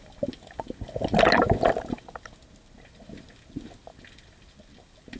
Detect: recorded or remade recorded